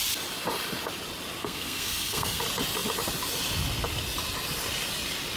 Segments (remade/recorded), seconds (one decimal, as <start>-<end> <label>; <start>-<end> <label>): 0.0-1.4 recorded; 1.4-2.4 remade; 2.4-5.4 recorded